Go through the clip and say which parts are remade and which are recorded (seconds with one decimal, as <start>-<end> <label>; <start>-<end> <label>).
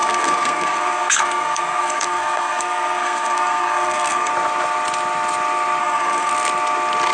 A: 0.0-4.3 remade; 4.3-5.8 recorded; 5.8-6.3 remade; 6.3-7.1 recorded